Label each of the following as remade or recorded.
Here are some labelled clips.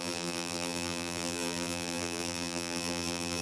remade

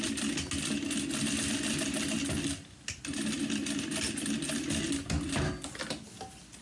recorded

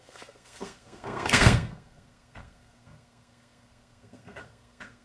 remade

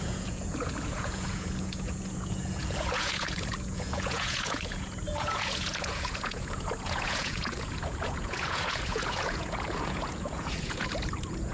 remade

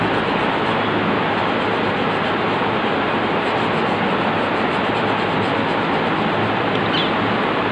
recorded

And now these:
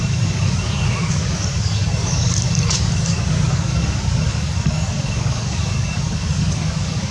remade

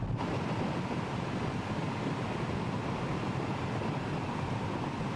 recorded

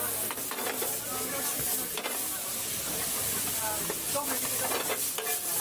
recorded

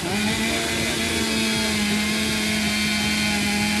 recorded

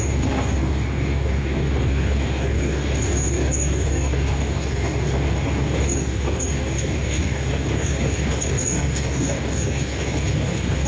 remade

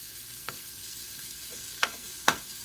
remade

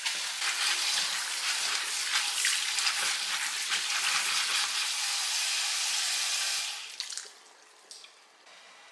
recorded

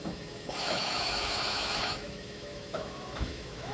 remade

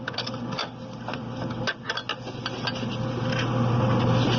recorded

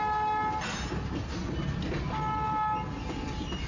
recorded